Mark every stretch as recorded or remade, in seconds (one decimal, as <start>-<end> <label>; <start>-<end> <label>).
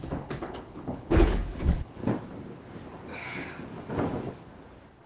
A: 0.0-2.0 remade; 2.0-5.1 recorded